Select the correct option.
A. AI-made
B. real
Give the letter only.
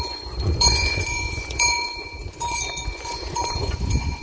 A